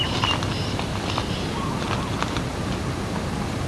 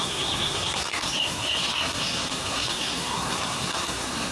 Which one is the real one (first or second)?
first